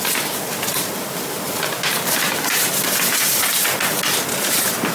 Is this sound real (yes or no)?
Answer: yes